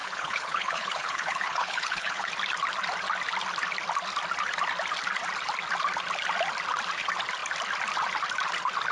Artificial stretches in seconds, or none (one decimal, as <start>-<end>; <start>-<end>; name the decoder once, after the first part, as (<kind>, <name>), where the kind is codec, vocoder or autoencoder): 0.0-2.3 (codec, HILCodec)